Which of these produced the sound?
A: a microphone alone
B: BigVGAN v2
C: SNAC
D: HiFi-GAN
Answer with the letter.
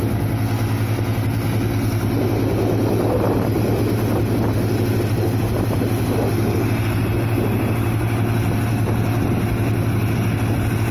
A